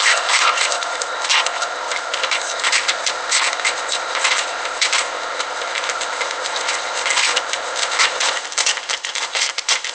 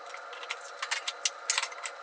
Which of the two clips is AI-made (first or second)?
first